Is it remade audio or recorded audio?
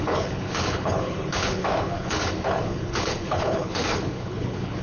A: remade